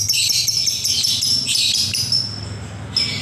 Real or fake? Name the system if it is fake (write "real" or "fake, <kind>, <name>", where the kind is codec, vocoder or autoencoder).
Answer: real